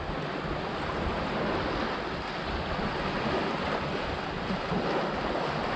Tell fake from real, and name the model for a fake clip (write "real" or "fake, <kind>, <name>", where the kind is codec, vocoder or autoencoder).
real